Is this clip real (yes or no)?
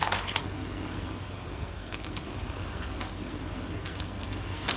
no